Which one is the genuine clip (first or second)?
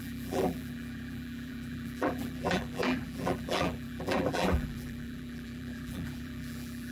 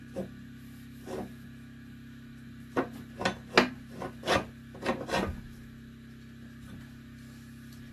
second